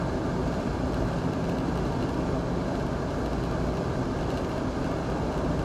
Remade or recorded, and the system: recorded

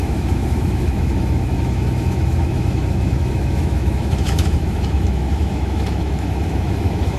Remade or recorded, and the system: remade, autoencoder, DAC-VAE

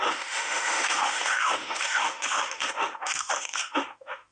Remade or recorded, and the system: remade, autoencoder, DAC-VAE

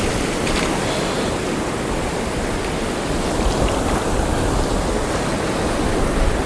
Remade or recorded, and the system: recorded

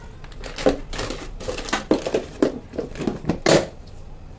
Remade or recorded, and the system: recorded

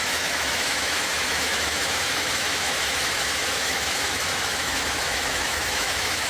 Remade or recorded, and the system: remade, autoencoder, DAC-VAE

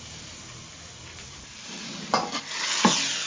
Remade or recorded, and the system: recorded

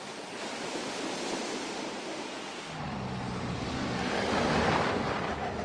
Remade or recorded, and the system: recorded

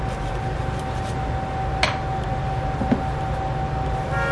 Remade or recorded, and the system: recorded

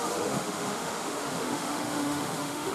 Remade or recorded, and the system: remade, autoencoder, DAC-VAE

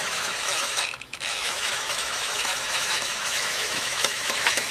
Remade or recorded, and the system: remade, autoencoder, DAC-VAE